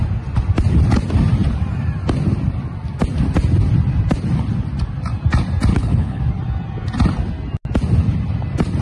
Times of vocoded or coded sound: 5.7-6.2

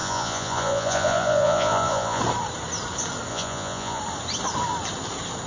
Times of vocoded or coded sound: 0.0-2.2; 3.3-4.0

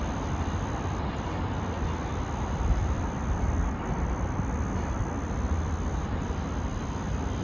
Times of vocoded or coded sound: 2.8-3.5

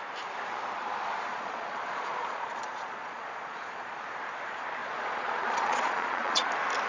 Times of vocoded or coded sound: 1.3-4.0; 4.8-6.5

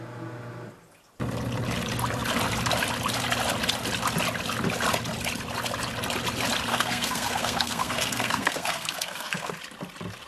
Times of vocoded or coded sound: 6.7-9.5

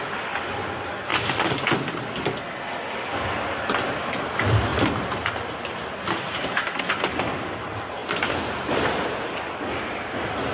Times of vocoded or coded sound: 1.1-2.1

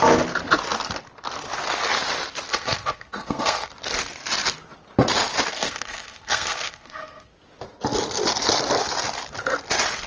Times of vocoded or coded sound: 2.5-3.7; 5.5-7.3